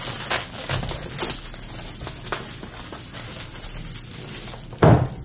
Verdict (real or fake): real